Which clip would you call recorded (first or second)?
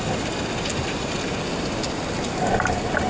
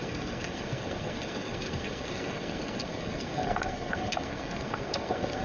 first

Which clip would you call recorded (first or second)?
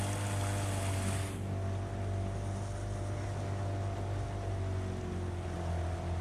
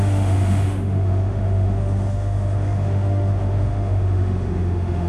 first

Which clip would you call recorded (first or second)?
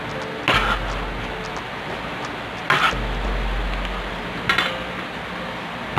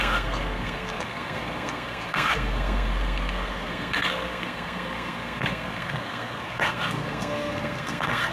first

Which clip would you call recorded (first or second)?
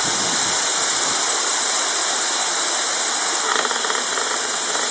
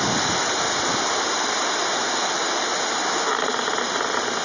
second